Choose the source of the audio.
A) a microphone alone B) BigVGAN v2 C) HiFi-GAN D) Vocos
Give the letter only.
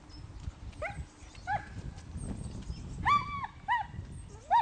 A